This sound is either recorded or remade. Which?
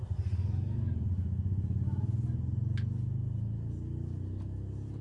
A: recorded